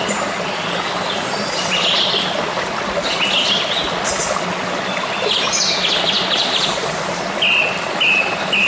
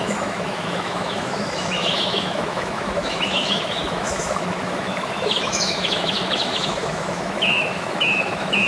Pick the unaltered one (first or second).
first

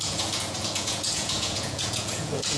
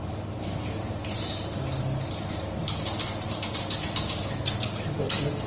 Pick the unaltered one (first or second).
second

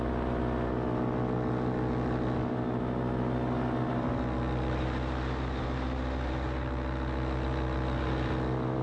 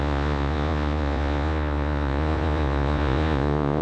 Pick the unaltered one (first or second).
first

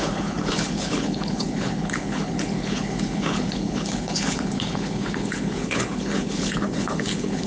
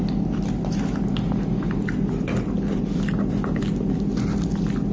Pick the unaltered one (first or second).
second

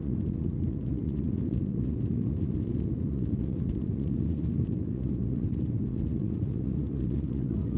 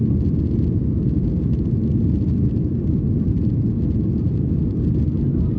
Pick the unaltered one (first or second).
second